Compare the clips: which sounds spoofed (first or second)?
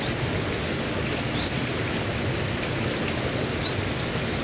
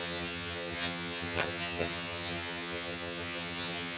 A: second